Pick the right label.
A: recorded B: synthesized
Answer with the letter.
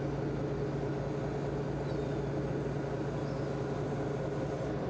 A